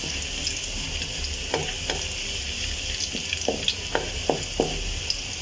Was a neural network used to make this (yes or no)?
no